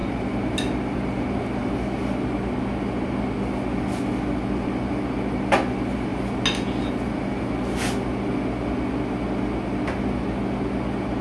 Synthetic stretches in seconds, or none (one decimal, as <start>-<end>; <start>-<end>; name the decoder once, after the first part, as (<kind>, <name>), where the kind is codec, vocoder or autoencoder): none